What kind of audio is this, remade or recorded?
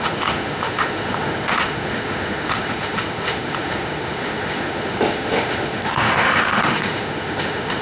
remade